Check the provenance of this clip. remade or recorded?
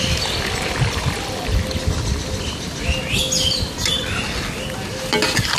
recorded